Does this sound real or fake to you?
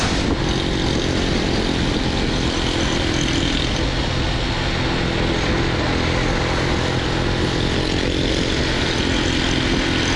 real